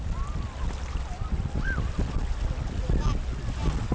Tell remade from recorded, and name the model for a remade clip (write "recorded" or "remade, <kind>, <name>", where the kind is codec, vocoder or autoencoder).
recorded